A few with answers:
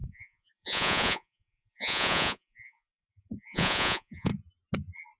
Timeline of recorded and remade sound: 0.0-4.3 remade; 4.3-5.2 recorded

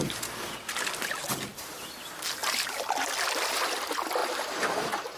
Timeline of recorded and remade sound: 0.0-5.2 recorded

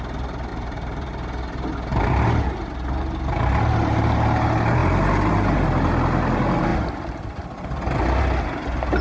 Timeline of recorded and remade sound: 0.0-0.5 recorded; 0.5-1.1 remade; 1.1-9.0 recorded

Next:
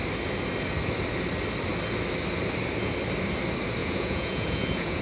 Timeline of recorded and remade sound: 0.0-3.8 recorded; 3.8-5.0 remade